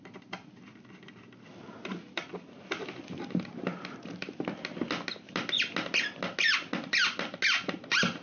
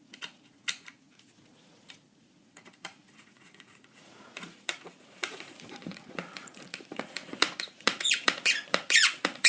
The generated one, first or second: second